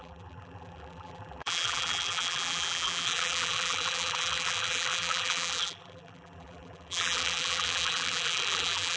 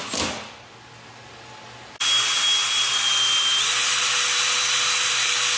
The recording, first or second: second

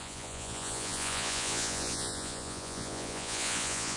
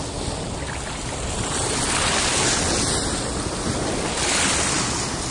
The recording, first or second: second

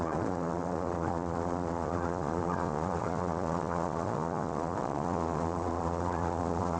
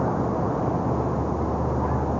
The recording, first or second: second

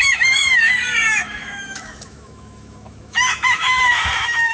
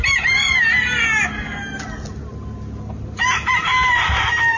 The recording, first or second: second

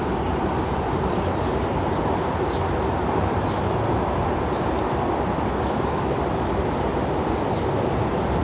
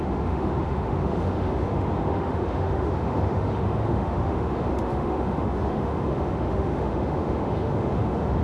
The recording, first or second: first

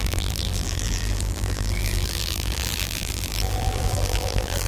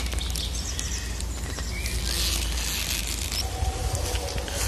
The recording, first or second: second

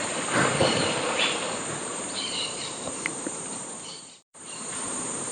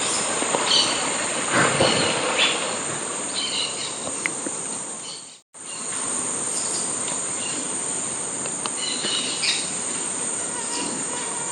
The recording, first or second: second